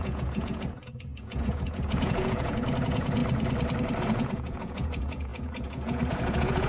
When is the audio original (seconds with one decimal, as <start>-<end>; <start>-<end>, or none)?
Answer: 3.2-4.0